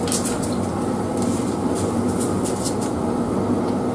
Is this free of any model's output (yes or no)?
yes